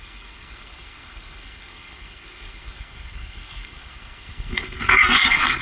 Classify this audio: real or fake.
fake